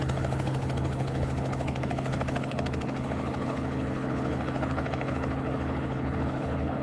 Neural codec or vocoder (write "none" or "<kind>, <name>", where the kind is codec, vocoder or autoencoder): codec, HILCodec